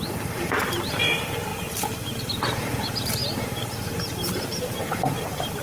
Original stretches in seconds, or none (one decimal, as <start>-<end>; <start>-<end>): 1.5-2.2; 3.2-3.8